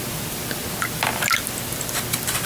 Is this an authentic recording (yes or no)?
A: yes